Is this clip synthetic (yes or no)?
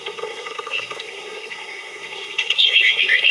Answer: yes